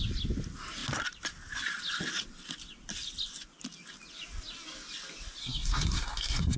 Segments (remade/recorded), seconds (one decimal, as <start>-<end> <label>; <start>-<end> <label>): 0.0-5.4 recorded; 5.4-6.6 remade